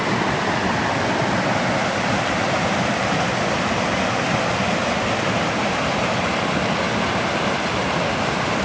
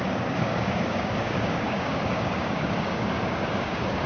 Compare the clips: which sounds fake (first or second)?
second